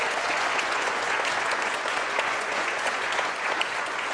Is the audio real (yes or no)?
no